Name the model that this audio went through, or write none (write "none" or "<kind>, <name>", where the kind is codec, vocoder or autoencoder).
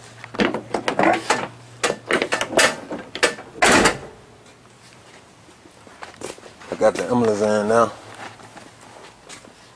none